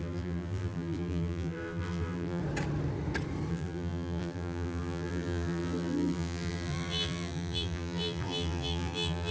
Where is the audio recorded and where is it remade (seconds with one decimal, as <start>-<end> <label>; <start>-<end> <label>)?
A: 0.0-2.4 remade; 2.4-3.5 recorded; 3.5-9.3 remade